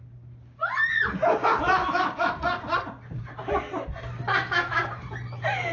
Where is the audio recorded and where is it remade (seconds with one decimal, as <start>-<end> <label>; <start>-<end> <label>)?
0.0-1.8 recorded; 1.8-2.4 remade; 2.4-4.4 recorded; 4.4-4.9 remade; 4.9-5.7 recorded